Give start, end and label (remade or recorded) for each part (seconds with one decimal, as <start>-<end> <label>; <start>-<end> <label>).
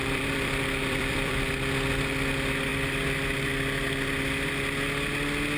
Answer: 0.0-1.5 remade; 1.5-5.6 recorded